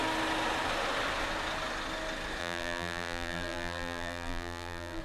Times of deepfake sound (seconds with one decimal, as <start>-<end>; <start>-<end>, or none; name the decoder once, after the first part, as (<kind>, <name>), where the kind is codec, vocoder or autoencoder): 2.4-5.0 (vocoder, BigVGAN v2)

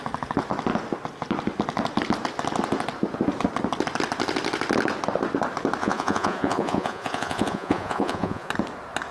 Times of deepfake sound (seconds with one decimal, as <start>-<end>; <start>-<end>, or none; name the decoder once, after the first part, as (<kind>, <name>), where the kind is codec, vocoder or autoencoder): 5.8-8.5 (vocoder, Vocos)

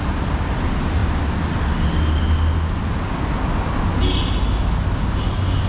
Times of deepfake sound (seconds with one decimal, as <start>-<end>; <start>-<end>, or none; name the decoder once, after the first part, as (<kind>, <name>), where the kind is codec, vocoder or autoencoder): none

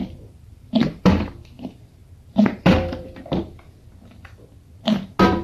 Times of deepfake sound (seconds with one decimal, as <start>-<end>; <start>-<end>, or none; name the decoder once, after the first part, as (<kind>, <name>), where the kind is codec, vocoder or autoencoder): 0.0-1.1 (vocoder, BigVGAN v2); 2.0-3.2

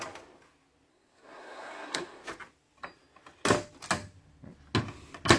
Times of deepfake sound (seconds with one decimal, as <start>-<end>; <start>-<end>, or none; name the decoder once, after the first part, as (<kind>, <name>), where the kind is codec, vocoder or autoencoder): 0.9-2.2 (codec, SNAC)

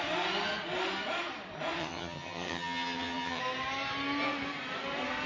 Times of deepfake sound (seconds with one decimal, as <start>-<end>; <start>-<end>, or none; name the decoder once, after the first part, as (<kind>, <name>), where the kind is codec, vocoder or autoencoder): 1.8-3.4 (vocoder, HiFi-GAN)